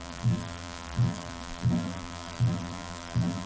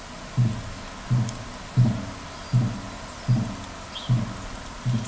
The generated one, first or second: first